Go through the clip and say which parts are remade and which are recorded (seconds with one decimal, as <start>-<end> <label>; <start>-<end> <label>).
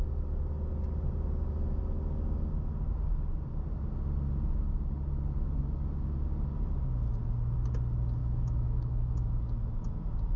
0.0-8.2 recorded; 8.2-9.3 remade; 9.3-10.4 recorded